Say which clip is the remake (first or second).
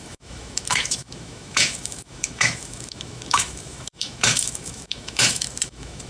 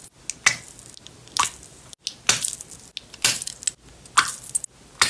first